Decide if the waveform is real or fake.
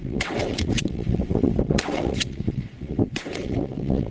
fake